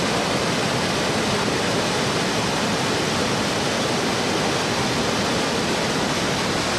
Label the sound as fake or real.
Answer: real